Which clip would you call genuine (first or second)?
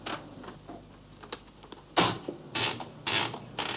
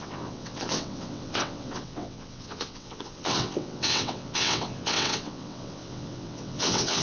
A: first